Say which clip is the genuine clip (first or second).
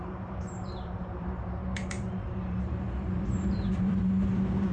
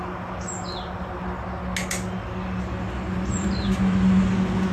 second